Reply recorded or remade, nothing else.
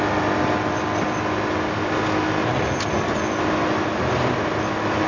recorded